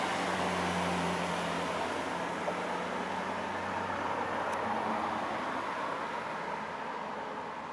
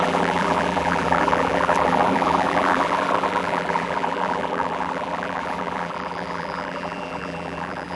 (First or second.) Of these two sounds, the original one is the first